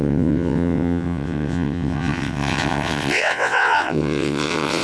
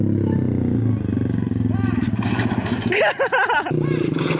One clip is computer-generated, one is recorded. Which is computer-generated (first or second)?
first